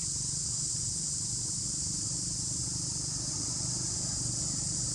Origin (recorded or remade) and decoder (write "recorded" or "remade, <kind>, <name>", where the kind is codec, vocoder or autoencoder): recorded